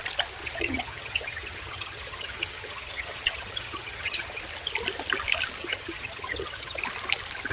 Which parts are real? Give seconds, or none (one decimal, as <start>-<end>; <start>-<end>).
0.0-0.4; 4.4-5.6; 6.8-7.5